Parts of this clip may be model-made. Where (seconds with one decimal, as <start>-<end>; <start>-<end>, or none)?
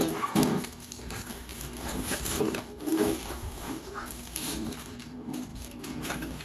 0.0-6.4